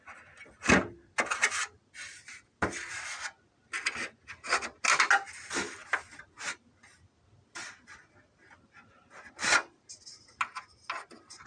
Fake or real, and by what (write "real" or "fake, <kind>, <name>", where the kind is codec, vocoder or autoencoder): real